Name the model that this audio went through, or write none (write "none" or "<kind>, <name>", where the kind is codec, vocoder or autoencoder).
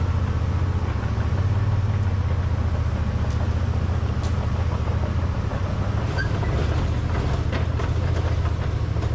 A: none